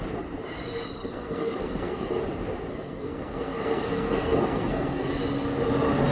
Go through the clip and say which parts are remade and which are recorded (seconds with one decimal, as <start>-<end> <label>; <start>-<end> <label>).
0.0-1.0 recorded; 1.0-2.2 remade; 2.2-2.7 recorded; 2.7-5.1 remade; 5.1-6.1 recorded

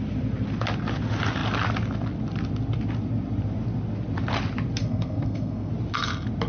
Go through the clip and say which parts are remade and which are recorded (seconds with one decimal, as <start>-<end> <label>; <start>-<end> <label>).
0.0-4.8 recorded; 4.8-5.7 remade; 5.7-6.5 recorded

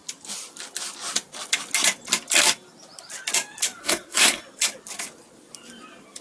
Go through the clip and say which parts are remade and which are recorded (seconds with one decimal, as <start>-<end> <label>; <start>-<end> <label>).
0.0-3.8 recorded; 3.8-4.4 remade; 4.4-6.2 recorded

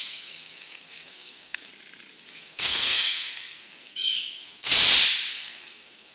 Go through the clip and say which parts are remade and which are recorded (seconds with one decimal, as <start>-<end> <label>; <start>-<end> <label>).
0.0-1.7 remade; 1.7-2.3 recorded; 2.3-4.7 remade; 4.7-5.3 recorded; 5.3-6.1 remade

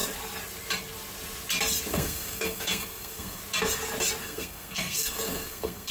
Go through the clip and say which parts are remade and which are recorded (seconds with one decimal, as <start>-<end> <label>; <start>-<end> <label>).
0.0-1.9 recorded; 1.9-3.4 remade; 3.4-4.2 recorded; 4.2-5.9 remade